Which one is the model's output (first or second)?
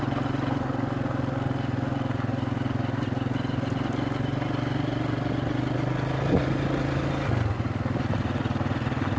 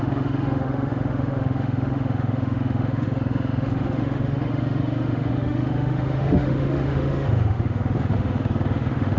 second